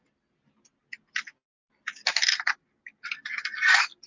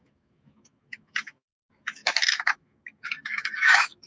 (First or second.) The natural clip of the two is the first